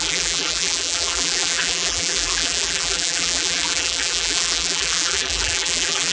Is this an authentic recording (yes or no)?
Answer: no